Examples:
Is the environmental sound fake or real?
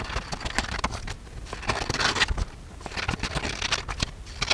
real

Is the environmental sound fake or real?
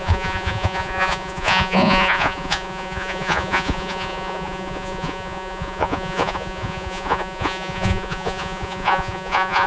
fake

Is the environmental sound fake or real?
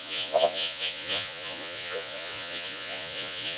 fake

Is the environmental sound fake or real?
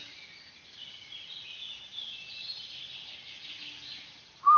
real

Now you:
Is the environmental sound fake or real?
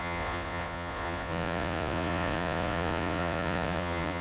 fake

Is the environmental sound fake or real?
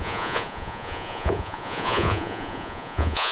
fake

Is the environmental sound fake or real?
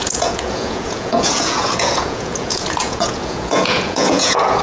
fake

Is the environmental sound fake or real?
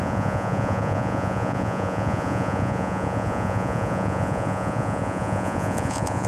fake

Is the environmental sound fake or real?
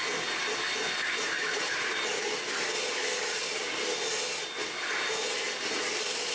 real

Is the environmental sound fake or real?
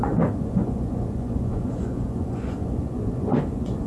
fake